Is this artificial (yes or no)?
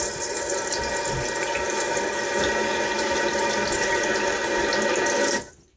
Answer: no